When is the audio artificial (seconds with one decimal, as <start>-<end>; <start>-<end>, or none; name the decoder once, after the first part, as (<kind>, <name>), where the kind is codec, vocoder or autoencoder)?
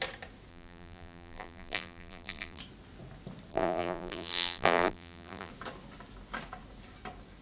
0.5-2.6 (vocoder, BigVGAN v2); 3.5-5.5